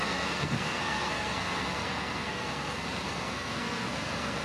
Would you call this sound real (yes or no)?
no